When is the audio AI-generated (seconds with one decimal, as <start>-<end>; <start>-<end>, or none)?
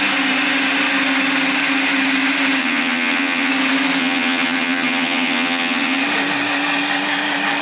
2.6-3.5; 4.0-6.0